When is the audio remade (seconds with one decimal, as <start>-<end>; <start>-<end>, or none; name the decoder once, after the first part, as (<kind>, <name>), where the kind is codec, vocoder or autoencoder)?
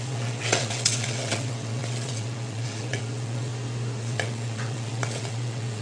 0.0-3.5 (vocoder, WaveNeXt); 4.0-5.8